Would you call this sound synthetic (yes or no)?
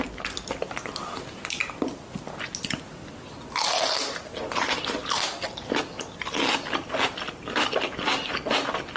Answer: no